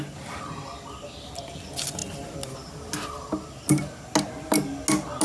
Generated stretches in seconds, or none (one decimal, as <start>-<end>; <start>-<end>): none